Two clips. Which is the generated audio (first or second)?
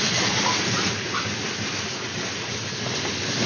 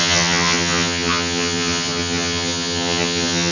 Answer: second